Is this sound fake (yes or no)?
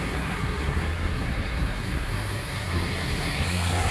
yes